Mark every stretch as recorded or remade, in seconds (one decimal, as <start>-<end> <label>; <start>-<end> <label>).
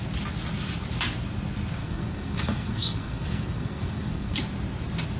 0.0-1.8 recorded; 1.8-4.4 remade; 4.4-5.2 recorded